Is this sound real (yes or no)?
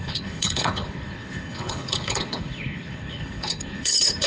no